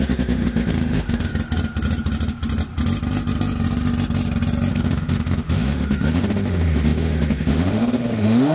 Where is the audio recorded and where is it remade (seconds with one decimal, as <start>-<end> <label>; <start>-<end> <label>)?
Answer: 0.0-1.3 remade; 1.3-4.7 recorded; 4.7-8.5 remade